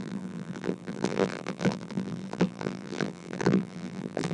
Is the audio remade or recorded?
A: remade